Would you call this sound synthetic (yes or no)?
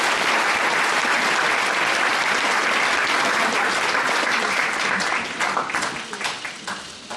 no